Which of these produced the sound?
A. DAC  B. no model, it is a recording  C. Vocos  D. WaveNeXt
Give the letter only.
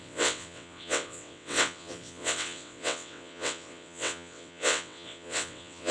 D